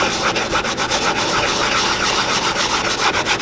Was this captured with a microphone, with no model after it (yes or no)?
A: yes